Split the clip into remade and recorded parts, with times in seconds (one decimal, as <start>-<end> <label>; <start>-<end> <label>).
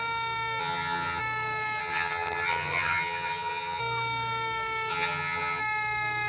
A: 0.0-0.6 recorded; 0.6-1.2 remade; 1.2-1.8 recorded; 1.8-3.8 remade; 3.8-4.9 recorded; 4.9-5.6 remade; 5.6-6.3 recorded